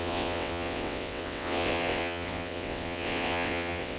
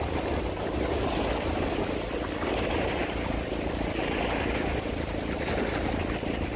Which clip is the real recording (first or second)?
second